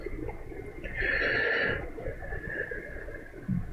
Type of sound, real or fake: real